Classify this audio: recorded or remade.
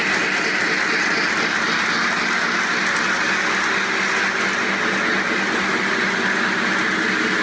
recorded